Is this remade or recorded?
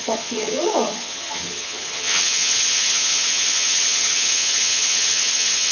remade